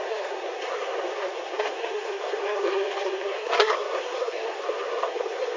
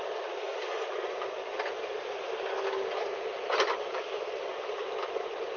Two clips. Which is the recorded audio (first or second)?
second